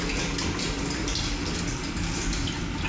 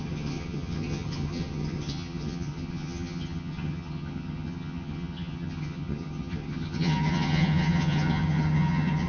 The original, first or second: first